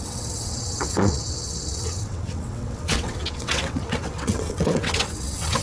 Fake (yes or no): yes